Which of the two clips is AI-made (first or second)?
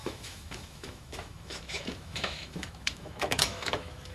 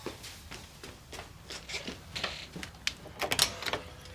first